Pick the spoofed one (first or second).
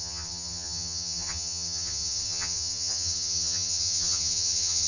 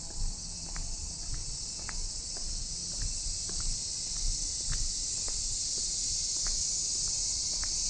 first